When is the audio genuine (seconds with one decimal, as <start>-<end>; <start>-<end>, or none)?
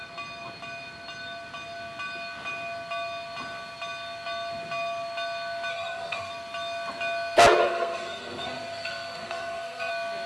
0.0-5.7; 6.3-7.6; 9.9-10.3